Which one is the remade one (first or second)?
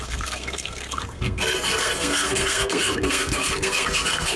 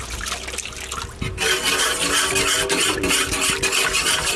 first